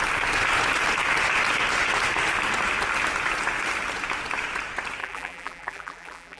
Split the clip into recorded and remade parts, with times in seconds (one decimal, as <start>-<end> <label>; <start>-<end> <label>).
0.0-5.0 recorded; 5.0-6.4 remade